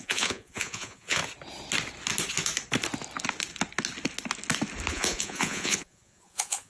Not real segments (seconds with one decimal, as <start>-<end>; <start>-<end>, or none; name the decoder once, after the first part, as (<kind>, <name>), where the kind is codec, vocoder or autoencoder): 0.0-1.2 (vocoder, Vocos); 4.9-6.7